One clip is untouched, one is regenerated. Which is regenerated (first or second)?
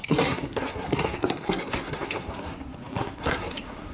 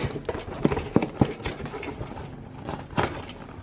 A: first